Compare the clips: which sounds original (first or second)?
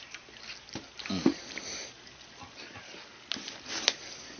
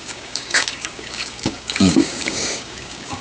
first